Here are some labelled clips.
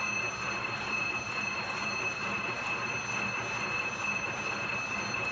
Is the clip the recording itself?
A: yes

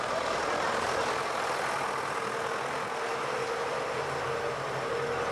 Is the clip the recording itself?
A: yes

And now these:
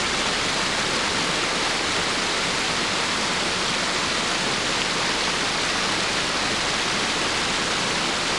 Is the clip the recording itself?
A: yes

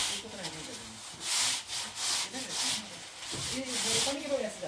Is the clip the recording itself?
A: yes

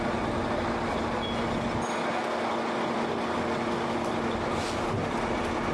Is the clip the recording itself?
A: yes